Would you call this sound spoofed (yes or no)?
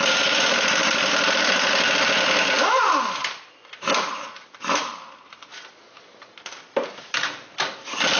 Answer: no